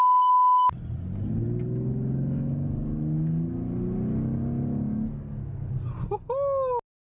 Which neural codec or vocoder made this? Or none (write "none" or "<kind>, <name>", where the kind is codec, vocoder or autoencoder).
none